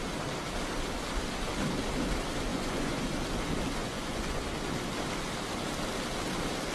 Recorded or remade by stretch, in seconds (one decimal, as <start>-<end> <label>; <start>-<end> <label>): 0.0-2.5 recorded; 2.5-3.0 remade; 3.0-3.8 recorded; 3.8-4.4 remade; 4.4-6.7 recorded